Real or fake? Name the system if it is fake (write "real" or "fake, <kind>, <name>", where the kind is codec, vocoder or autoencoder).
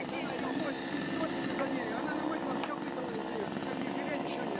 fake, vocoder, BigVGAN v2